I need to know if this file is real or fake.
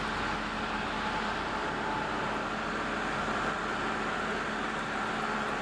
real